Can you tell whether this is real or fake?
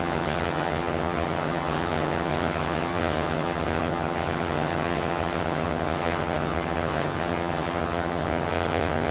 fake